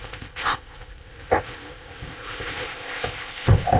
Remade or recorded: remade